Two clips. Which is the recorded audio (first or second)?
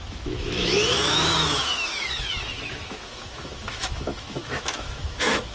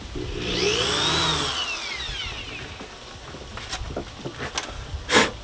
second